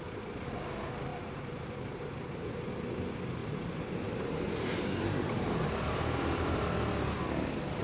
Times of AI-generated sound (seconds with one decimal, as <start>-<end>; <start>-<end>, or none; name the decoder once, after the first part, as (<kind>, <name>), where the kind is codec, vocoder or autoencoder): 1.1-2.7 (vocoder, BigVGAN v2); 3.4-6.6